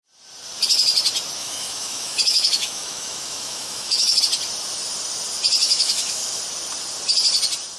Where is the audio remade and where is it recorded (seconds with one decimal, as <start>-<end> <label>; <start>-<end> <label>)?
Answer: 0.0-1.4 recorded; 1.4-4.2 remade; 4.2-5.6 recorded; 5.6-6.4 remade; 6.4-7.8 recorded